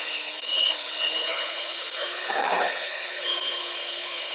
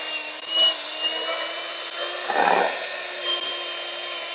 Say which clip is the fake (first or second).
first